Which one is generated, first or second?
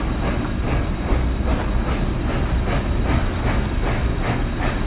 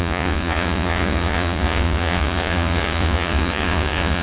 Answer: second